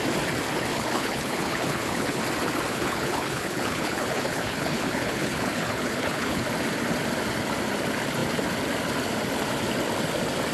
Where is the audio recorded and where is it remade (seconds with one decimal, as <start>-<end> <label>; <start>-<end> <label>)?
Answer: 0.0-0.7 recorded; 0.7-2.2 remade; 2.2-2.7 recorded; 2.7-6.4 remade; 6.4-10.5 recorded